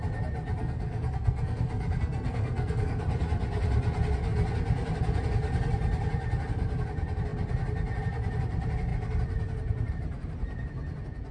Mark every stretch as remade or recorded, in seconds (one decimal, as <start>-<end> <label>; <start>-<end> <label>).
0.0-0.6 recorded; 0.6-3.0 remade; 3.0-11.3 recorded